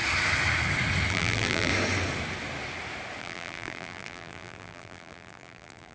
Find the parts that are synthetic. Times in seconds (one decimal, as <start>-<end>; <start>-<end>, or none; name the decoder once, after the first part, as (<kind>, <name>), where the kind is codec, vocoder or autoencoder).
1.1-1.7 (vocoder, BigVGAN v2); 3.2-5.9